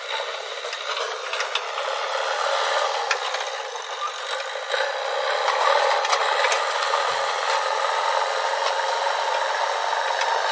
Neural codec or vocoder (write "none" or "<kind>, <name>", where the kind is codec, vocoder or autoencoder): none